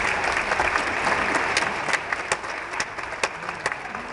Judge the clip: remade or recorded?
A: recorded